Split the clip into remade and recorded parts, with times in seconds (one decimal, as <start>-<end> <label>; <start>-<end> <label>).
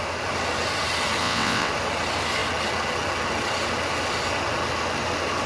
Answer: 0.0-1.2 recorded; 1.2-1.7 remade; 1.7-5.5 recorded